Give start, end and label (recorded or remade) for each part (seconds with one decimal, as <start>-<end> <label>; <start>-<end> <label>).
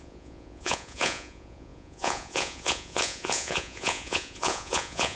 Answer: 0.0-5.2 remade